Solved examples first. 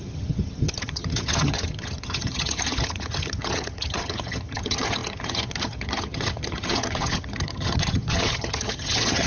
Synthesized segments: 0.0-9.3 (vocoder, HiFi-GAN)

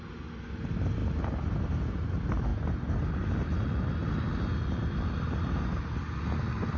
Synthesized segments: none